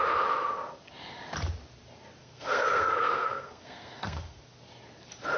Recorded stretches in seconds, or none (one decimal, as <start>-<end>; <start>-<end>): 0.0-2.2; 4.4-5.4